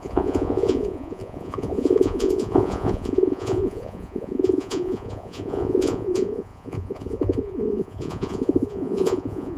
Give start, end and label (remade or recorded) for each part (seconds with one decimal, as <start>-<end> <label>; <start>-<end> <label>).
0.0-9.6 remade